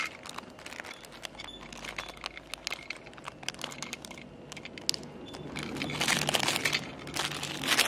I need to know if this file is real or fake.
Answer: real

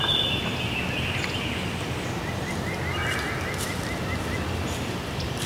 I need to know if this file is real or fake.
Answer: real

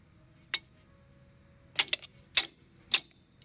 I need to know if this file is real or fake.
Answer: real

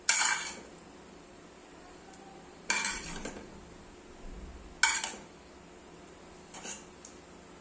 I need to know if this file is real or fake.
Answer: real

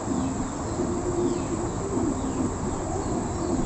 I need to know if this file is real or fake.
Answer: real